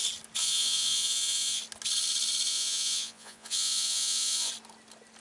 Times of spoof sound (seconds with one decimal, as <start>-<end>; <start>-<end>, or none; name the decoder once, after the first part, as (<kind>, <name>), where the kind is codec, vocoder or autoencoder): 0.4-1.6 (vocoder, Vocos); 2.5-4.5